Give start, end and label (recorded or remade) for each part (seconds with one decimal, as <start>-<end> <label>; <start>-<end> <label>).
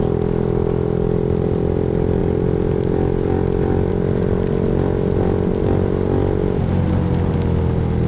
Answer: 0.0-8.1 recorded